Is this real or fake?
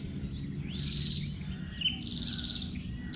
real